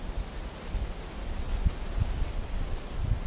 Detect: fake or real real